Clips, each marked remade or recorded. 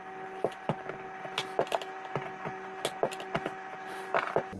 recorded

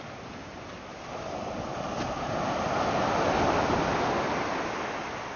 recorded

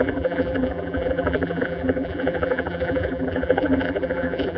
remade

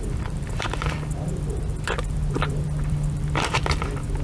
remade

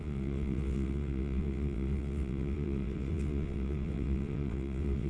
remade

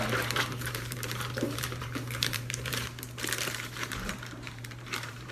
remade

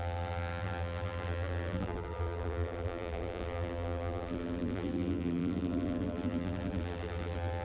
remade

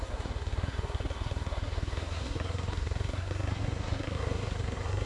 remade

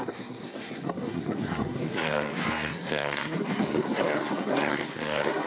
remade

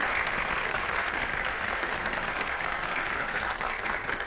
remade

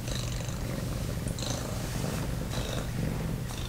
recorded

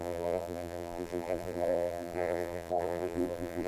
remade